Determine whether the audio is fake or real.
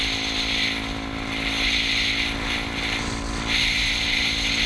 real